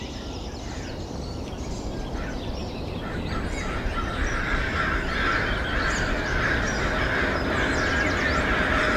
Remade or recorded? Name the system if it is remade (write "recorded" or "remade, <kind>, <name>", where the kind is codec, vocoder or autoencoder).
recorded